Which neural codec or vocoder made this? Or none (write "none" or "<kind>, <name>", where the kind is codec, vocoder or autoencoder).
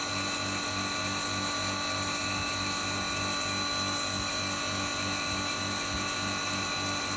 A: none